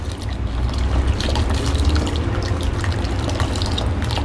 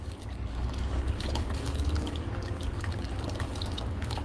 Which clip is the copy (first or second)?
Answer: second